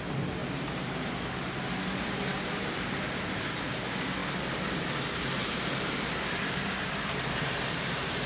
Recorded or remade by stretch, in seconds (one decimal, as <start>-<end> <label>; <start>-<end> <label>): 0.0-0.4 recorded; 0.4-1.1 remade; 1.1-5.4 recorded; 5.4-8.3 remade